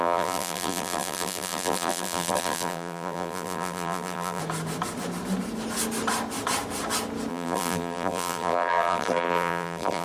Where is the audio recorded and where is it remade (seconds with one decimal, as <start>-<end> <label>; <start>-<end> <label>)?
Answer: 0.0-4.4 remade; 4.4-7.3 recorded; 7.3-10.0 remade

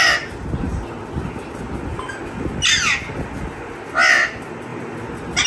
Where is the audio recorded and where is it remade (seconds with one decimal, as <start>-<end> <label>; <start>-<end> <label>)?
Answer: 0.0-5.5 recorded

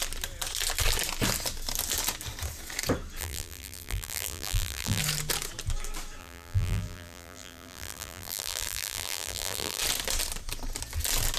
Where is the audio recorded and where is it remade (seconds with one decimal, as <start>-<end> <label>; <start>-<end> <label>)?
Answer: 0.0-3.2 recorded; 3.2-5.0 remade; 5.0-6.2 recorded; 6.2-9.8 remade; 9.8-11.4 recorded

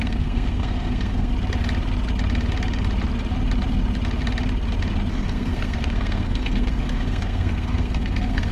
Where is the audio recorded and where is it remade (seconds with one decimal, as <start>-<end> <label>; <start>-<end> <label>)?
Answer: 0.0-1.3 remade; 1.3-5.1 recorded; 5.1-8.5 remade

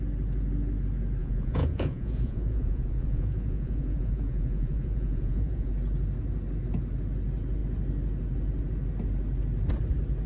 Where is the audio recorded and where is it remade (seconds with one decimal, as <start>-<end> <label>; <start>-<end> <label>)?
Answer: 0.0-1.2 recorded; 1.2-5.7 remade; 5.7-10.3 recorded